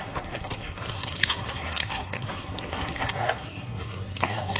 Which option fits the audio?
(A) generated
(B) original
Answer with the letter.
A